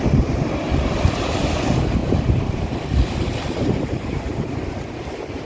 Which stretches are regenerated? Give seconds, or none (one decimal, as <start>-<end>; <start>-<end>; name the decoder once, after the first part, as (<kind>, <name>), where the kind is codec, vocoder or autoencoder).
2.0-2.8 (vocoder, BigVGAN v2); 3.6-4.2